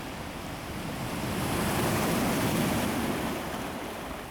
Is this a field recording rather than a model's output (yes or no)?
no